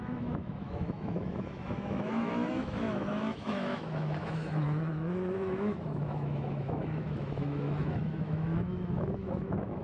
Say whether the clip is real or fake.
fake